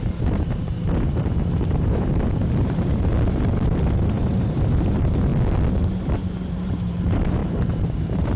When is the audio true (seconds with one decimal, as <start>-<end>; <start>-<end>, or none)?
3.1-4.1; 5.3-6.4